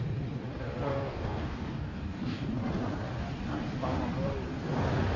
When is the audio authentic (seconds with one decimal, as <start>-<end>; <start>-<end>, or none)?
0.0-0.9; 2.5-5.2